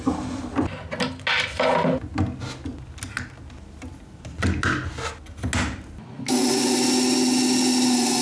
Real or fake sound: real